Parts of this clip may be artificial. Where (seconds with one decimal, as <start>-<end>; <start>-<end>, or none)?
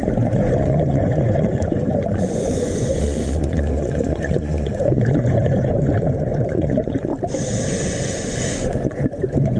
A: 0.0-7.1; 7.8-9.6